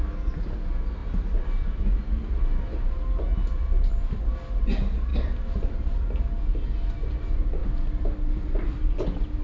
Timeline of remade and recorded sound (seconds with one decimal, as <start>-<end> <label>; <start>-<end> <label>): 0.0-1.0 recorded; 1.0-1.8 remade; 1.8-3.3 recorded; 3.3-4.3 remade; 4.3-5.1 recorded; 5.1-6.2 remade; 6.2-7.6 recorded; 7.6-9.4 remade

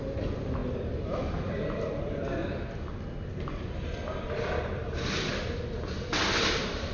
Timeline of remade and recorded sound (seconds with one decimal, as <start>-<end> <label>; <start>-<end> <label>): 0.0-2.4 remade; 2.4-6.5 recorded; 6.5-6.9 remade

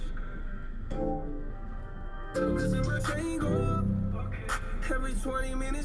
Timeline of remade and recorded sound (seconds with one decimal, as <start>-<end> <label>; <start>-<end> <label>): 0.0-0.4 recorded; 0.4-3.0 remade; 3.0-5.8 recorded

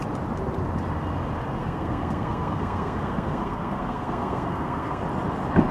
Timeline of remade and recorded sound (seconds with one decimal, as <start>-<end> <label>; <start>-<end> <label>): 0.0-1.6 recorded; 1.6-5.0 remade; 5.0-5.7 recorded

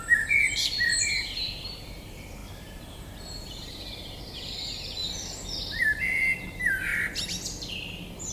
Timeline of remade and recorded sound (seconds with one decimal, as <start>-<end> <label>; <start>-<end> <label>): 0.0-5.0 remade; 5.0-5.8 recorded; 5.8-6.9 remade; 6.9-8.3 recorded

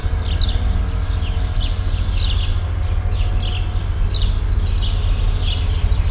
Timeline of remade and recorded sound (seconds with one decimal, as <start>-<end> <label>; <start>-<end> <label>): 0.0-6.1 recorded